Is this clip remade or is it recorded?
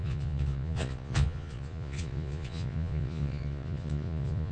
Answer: remade